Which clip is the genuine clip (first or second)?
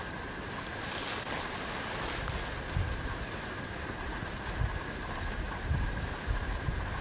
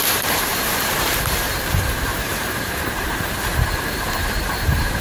first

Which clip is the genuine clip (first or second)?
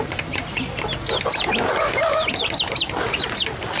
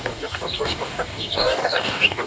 first